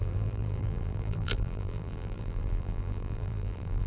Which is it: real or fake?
fake